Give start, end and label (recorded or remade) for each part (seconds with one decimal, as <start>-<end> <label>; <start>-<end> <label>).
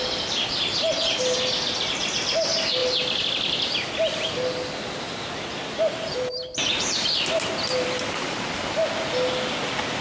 0.0-10.0 recorded